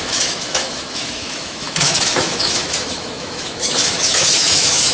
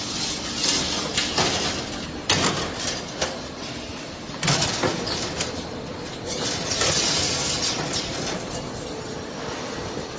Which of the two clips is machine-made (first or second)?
first